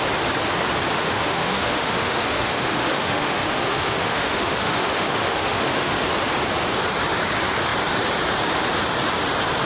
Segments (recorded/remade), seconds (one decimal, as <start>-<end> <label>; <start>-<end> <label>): 0.0-1.0 recorded; 1.0-5.9 remade; 5.9-9.7 recorded